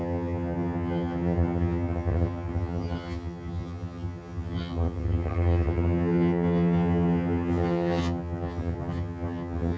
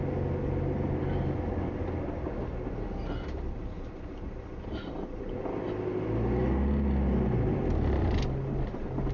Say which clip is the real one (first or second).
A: second